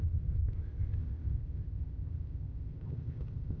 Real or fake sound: fake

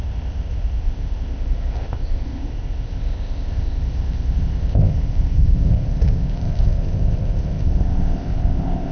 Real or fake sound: fake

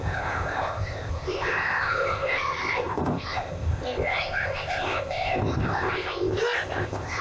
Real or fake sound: fake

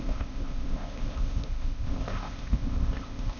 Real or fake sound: fake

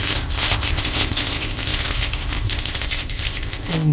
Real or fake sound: fake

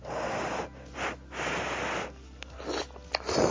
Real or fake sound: real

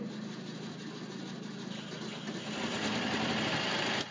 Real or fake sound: real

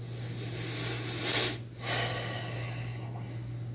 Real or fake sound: real